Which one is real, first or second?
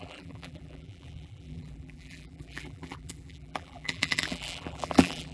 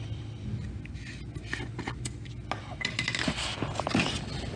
second